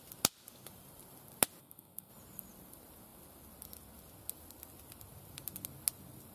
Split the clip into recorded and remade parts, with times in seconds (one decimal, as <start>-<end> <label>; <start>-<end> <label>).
0.0-1.6 recorded; 1.6-2.1 remade; 2.1-6.3 recorded